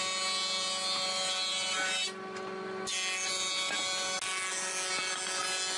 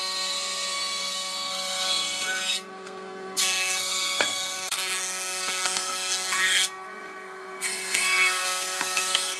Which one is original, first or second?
first